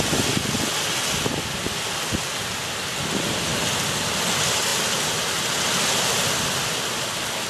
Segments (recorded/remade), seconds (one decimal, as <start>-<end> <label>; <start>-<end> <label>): 0.0-7.5 recorded